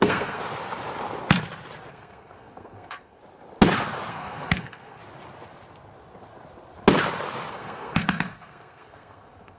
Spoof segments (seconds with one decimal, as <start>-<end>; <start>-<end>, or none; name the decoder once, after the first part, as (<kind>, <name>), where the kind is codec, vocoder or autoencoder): 0.0-0.4 (codec, SNAC); 1.9-3.2; 4.1-5.0; 7.5-9.6